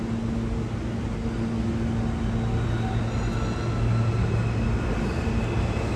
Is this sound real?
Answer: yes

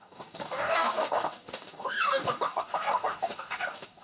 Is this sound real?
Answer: no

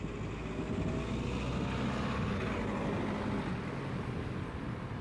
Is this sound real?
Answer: yes